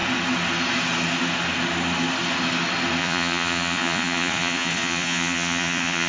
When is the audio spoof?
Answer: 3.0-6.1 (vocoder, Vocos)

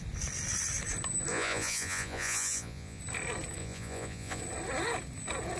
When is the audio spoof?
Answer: 1.3-3.0 (vocoder, Vocos); 3.6-4.4

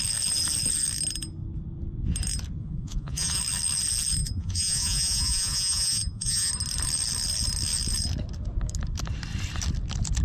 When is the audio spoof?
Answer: 2.6-3.4 (vocoder, Vocos); 4.2-6.5

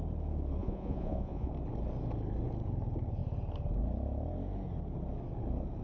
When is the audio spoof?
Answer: 0.6-1.5 (vocoder, Vocos)

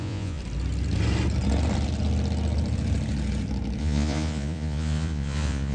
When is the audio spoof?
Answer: 0.0-0.4 (vocoder, Vocos); 3.8-5.7

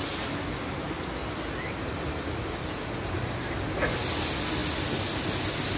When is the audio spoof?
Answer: none

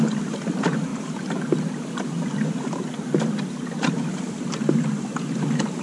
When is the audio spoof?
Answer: none